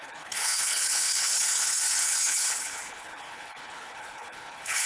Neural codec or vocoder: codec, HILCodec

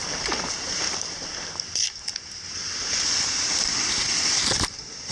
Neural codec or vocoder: vocoder, BigVGAN v2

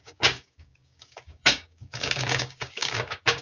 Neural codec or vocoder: codec, DAC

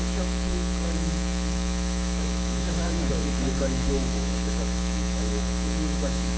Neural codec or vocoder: autoencoder, DAC-VAE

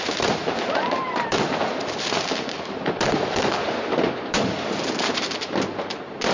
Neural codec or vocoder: vocoder, BigVGAN v2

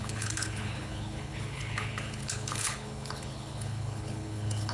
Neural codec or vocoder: codec, HILCodec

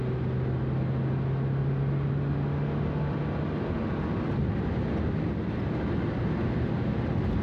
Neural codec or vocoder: none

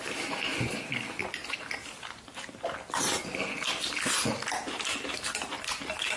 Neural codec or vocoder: none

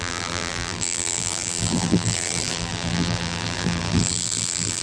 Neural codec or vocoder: vocoder, BigVGAN v2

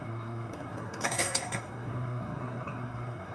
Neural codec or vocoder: codec, SNAC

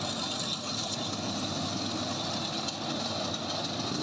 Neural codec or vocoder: none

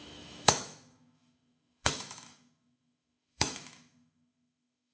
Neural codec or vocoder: autoencoder, DAC-VAE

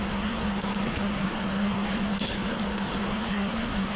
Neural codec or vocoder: codec, SNAC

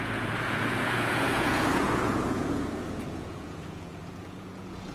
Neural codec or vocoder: vocoder, Vocos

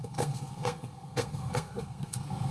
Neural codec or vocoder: codec, SNAC